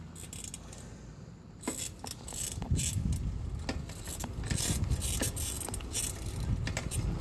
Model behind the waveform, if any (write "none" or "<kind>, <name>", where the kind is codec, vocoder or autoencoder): none